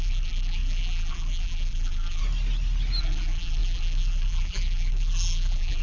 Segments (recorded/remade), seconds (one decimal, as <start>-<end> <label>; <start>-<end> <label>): 0.0-2.2 remade; 2.2-3.0 recorded; 3.0-5.8 remade